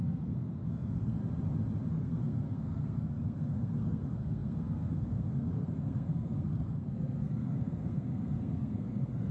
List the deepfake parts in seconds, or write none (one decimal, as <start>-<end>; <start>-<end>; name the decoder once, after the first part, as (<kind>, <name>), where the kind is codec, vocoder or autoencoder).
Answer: 0.0-1.2 (codec, SNAC); 1.9-9.3